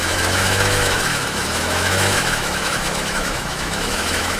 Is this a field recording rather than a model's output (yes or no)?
no